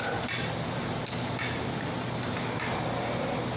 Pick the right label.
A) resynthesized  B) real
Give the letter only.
B